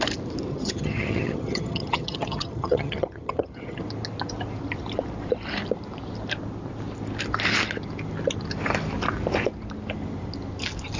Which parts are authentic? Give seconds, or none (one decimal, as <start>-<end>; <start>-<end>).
0.0-0.5; 3.8-11.0